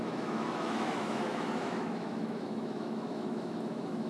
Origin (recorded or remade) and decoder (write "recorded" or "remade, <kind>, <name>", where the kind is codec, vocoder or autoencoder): remade, autoencoder, DAC-VAE